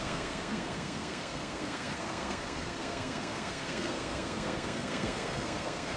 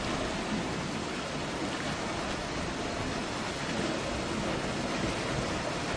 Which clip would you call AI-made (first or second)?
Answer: first